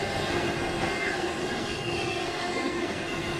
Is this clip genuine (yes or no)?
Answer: no